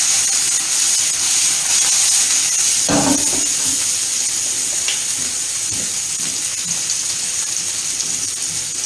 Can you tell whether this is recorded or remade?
recorded